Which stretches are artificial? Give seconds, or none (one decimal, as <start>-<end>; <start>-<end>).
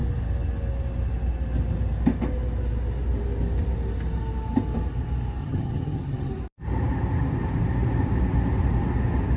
5.4-6.3